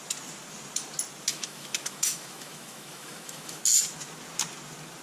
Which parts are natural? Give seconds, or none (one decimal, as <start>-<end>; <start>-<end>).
0.0-1.3; 3.6-5.0